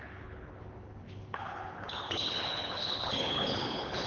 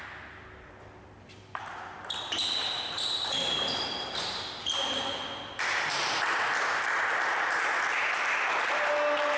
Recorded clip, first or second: second